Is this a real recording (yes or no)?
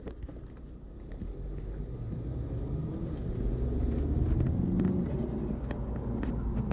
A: yes